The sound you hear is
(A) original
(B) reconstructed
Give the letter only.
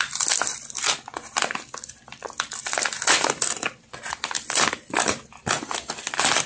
B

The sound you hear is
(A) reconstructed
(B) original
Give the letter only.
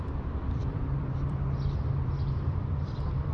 A